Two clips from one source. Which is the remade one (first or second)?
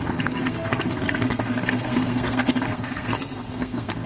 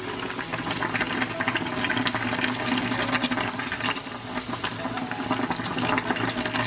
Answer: first